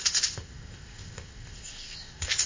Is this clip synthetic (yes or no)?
yes